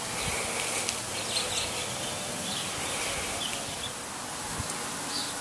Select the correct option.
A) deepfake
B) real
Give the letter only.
B